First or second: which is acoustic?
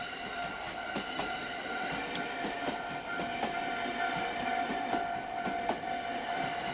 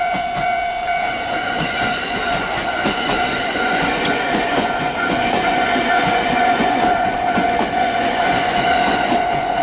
first